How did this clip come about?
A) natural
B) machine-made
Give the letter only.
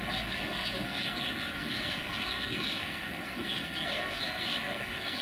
B